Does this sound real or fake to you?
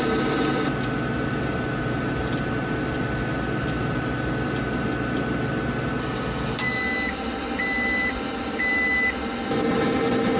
real